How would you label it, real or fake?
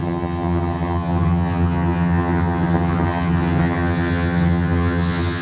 fake